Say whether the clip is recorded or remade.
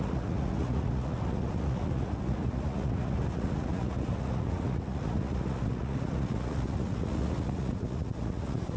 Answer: remade